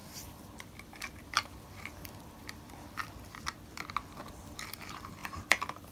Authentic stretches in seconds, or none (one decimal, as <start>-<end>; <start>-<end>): 2.7-5.2